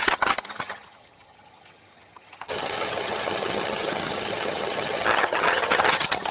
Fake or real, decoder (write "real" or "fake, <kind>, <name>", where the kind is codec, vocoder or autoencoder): fake, vocoder, HiFi-GAN